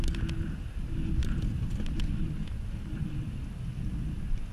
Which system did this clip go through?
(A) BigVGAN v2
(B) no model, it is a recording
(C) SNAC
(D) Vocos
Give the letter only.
B